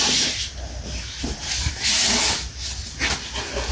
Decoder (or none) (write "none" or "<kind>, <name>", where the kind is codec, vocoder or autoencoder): none